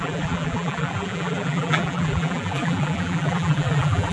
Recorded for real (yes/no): no